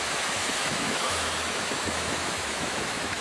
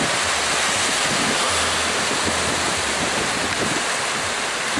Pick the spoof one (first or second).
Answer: first